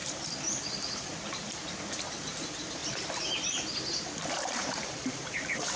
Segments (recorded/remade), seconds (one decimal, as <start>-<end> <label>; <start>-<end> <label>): 0.0-0.6 recorded; 0.6-1.1 remade; 1.1-2.2 recorded; 2.2-2.8 remade; 2.8-4.3 recorded; 4.3-5.8 remade

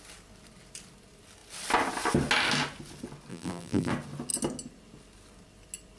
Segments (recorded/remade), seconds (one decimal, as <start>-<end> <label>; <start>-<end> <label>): 0.0-3.3 recorded; 3.3-3.9 remade; 3.9-6.0 recorded